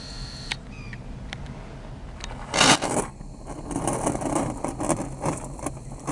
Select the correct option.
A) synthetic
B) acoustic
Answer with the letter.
B